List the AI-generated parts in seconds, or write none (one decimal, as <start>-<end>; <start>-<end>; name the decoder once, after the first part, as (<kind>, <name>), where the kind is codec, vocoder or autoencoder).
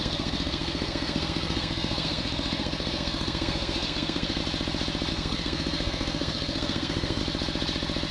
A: 0.0-4.4 (codec, SNAC); 5.1-7.2